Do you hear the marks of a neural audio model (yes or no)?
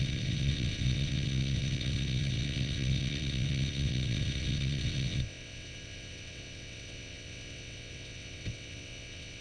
yes